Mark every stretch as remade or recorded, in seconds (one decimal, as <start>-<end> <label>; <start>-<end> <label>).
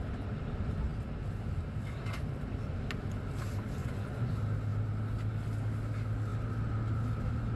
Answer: 0.0-3.8 recorded; 3.8-4.3 remade; 4.3-7.6 recorded